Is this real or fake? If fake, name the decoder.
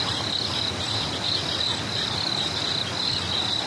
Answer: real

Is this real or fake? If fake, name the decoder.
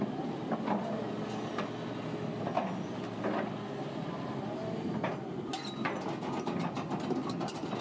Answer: real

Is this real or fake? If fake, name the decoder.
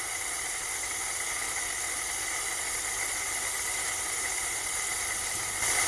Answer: real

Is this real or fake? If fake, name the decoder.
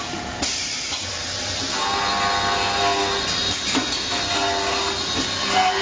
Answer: real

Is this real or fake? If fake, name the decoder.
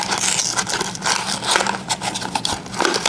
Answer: real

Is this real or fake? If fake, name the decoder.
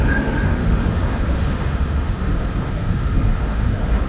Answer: fake, autoencoder, DAC-VAE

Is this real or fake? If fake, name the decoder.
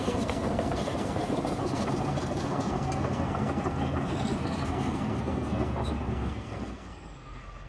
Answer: fake, codec, SNAC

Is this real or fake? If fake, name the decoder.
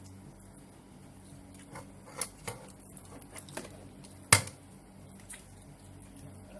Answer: real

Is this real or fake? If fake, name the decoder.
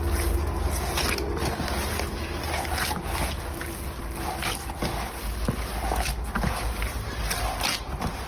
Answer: real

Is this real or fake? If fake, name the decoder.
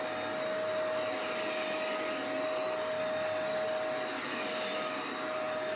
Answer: real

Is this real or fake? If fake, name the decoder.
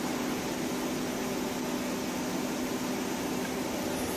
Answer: real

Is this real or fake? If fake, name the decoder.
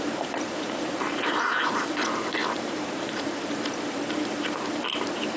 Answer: fake, vocoder, BigVGAN v2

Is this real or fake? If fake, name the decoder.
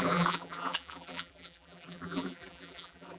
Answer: fake, vocoder, BigVGAN v2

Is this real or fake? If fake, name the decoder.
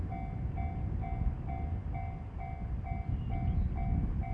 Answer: real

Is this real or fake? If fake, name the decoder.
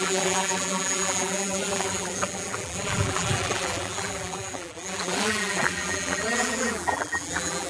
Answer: fake, vocoder, BigVGAN v2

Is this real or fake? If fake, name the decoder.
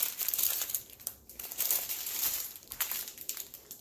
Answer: fake, vocoder, BigVGAN v2